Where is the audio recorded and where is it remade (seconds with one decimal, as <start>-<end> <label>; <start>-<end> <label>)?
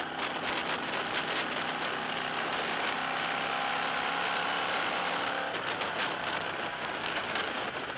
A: 0.0-6.7 recorded; 6.7-7.6 remade; 7.6-8.0 recorded